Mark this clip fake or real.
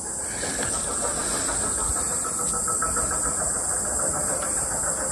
real